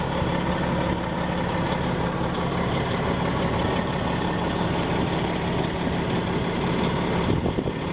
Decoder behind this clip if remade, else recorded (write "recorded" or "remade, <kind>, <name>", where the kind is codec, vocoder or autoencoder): recorded